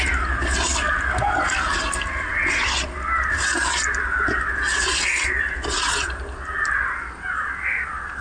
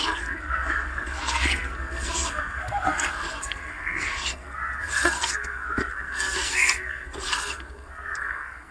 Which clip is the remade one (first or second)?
second